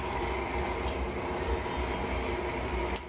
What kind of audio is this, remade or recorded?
recorded